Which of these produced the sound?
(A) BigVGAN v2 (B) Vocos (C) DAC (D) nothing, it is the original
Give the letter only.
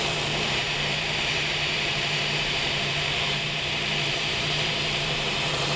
A